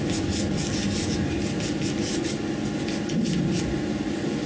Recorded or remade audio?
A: recorded